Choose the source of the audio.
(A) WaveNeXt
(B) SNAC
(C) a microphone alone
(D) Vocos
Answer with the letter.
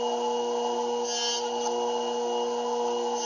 C